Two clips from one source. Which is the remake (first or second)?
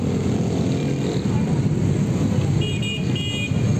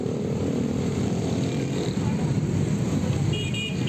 second